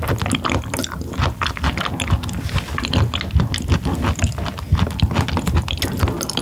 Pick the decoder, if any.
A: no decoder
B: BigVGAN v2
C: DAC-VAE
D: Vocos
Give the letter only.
A